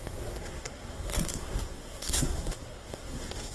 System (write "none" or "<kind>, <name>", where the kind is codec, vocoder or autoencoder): codec, SNAC